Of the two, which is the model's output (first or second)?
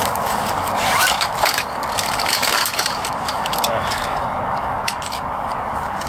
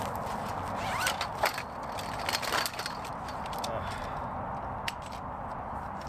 first